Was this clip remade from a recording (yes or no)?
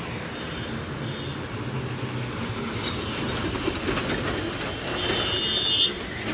no